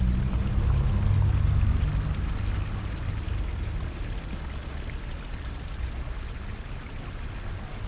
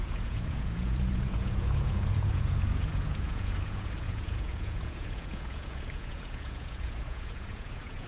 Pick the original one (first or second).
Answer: first